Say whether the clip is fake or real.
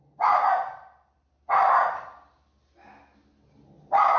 real